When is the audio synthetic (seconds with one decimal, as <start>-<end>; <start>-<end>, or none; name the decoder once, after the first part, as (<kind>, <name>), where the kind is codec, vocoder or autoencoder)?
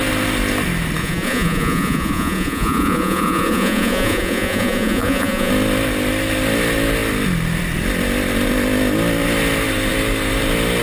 1.0-5.5 (vocoder, Vocos)